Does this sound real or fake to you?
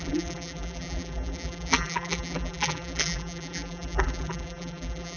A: fake